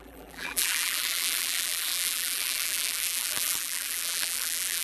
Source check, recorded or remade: remade